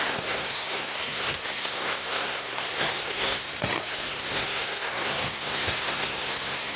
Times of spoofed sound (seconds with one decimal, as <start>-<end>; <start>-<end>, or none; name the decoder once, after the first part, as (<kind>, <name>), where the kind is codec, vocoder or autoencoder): 0.0-6.8 (codec, SNAC)